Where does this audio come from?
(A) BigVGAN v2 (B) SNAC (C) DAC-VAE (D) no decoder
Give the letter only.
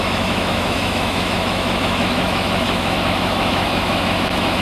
C